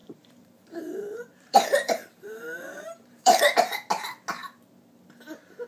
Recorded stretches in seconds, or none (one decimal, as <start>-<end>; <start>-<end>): 3.4-5.7